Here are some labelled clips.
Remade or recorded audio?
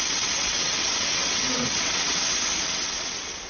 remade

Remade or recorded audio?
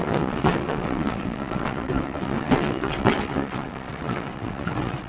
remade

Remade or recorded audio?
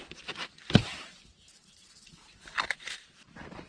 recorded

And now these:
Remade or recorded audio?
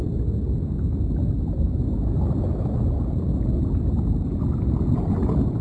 recorded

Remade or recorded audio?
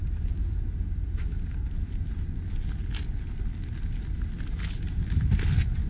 recorded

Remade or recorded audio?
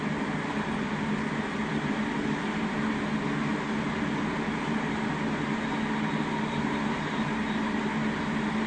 recorded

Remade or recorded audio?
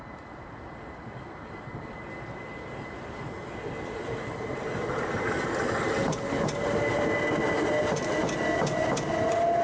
recorded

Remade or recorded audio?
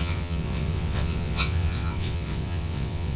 remade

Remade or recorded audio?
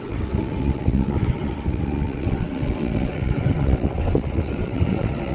remade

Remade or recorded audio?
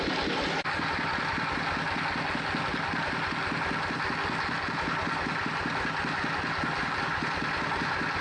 recorded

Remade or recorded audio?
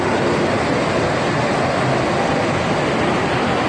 recorded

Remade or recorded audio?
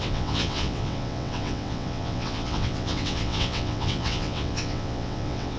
remade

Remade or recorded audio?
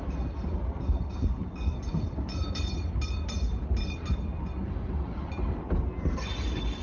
recorded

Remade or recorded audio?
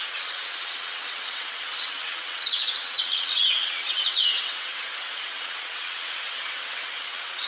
remade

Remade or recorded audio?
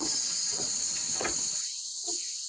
remade